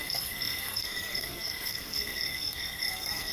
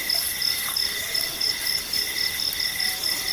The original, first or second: second